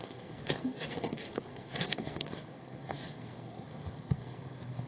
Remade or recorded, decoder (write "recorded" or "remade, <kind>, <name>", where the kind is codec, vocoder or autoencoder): remade, codec, SNAC